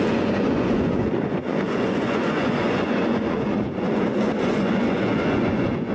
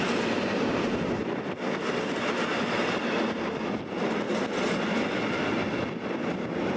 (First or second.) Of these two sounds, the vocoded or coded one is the first